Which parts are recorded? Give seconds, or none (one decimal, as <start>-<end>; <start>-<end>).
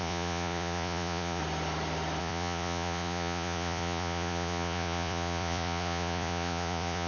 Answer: 1.4-2.2